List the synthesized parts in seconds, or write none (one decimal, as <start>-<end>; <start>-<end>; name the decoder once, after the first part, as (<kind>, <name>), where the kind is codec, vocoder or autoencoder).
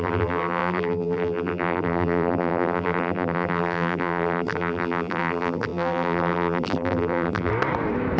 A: 0.0-7.5 (vocoder, BigVGAN v2)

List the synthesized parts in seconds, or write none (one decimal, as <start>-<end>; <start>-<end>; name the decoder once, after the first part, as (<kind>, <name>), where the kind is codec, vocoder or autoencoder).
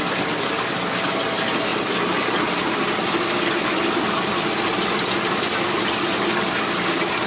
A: none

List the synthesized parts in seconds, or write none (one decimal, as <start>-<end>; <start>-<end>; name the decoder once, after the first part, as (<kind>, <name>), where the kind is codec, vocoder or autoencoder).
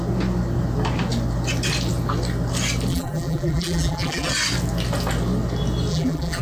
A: 2.9-4.3 (vocoder, BigVGAN v2); 5.9-6.4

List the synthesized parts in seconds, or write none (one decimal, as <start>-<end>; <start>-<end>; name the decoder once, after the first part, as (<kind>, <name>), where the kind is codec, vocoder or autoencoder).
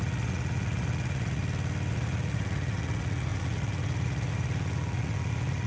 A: 0.0-1.4 (vocoder, Vocos); 1.9-5.7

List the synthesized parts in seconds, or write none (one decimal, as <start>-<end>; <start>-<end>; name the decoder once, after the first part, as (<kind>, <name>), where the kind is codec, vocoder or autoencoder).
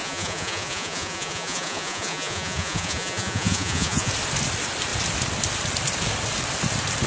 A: 0.0-4.1 (vocoder, Vocos)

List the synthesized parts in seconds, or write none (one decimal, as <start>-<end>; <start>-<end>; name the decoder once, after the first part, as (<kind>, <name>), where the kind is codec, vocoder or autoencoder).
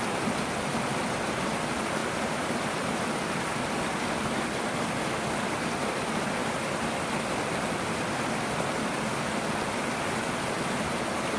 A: none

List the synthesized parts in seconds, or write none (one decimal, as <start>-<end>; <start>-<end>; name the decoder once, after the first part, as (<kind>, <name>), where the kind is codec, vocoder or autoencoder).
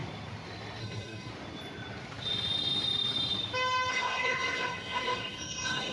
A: 0.8-1.3 (codec, SNAC); 3.9-5.9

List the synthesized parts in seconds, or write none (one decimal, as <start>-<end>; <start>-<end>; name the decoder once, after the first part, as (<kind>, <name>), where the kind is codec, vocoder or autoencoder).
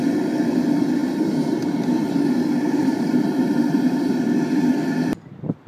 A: 1.0-4.4 (vocoder, BigVGAN v2)